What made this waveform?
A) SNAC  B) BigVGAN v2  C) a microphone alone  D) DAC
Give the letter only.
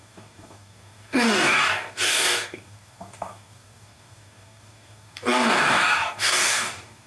D